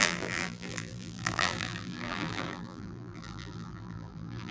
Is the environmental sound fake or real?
fake